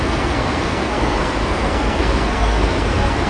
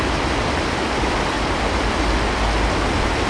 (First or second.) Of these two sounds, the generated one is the first